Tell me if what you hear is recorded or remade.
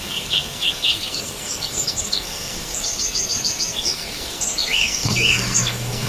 remade